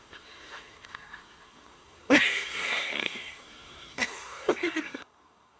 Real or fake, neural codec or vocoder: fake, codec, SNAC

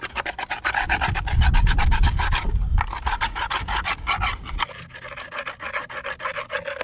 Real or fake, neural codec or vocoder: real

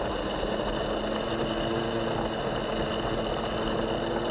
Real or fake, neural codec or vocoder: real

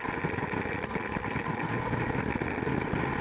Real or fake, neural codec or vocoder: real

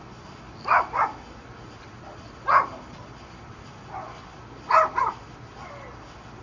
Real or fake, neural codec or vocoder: real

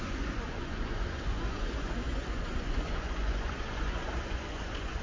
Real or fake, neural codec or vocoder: fake, vocoder, Vocos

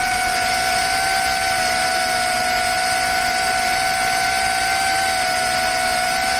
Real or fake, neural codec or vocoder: real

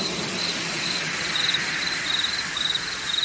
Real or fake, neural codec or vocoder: real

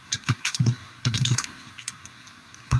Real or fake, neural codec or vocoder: fake, codec, SNAC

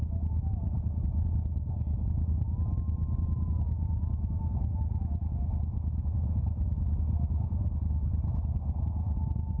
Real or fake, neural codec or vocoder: real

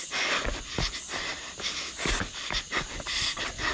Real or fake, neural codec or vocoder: real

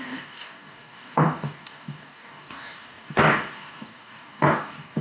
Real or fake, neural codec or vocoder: fake, codec, DAC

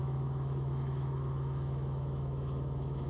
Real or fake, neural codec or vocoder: fake, autoencoder, DAC-VAE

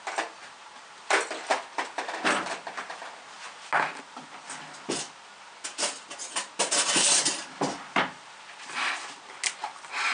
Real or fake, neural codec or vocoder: real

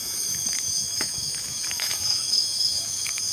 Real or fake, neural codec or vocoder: fake, autoencoder, DAC-VAE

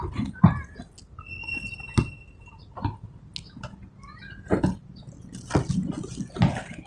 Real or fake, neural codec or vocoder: real